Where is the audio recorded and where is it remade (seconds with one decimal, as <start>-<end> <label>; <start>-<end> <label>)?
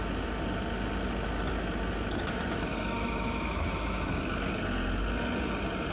0.0-2.7 recorded; 2.7-4.1 remade; 4.1-5.9 recorded